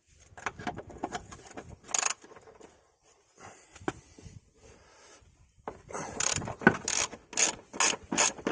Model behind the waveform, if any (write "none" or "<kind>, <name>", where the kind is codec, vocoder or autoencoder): none